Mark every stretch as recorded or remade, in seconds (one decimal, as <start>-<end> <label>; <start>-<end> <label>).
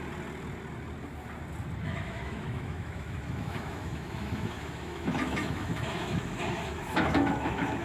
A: 0.0-1.8 recorded; 1.8-7.8 remade